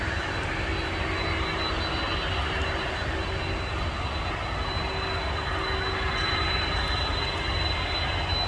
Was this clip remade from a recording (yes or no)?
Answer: no